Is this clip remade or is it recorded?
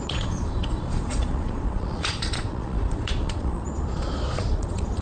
remade